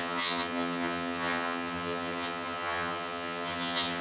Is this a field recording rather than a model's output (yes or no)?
no